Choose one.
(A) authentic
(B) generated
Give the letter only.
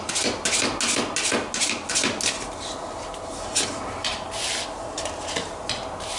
A